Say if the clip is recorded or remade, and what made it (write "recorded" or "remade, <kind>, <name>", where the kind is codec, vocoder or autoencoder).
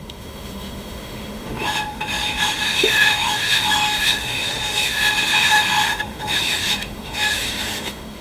remade, autoencoder, DAC-VAE